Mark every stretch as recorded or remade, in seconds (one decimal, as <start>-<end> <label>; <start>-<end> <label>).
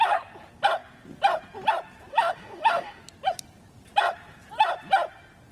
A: 0.0-2.1 recorded; 2.1-3.0 remade; 3.0-5.5 recorded